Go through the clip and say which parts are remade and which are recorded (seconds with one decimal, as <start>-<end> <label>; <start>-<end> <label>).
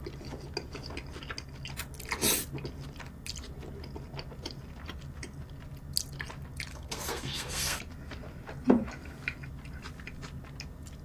0.0-6.7 recorded; 6.7-7.8 remade; 7.8-11.0 recorded